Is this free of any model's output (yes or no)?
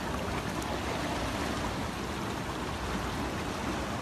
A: yes